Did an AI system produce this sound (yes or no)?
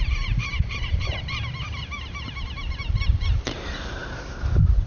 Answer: yes